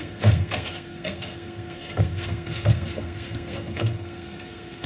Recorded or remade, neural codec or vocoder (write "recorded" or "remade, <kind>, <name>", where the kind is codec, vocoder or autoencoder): remade, codec, SNAC